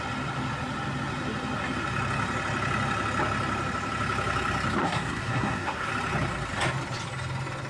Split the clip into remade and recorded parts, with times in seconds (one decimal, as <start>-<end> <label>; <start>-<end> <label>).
0.0-4.8 recorded; 4.8-5.9 remade; 5.9-7.7 recorded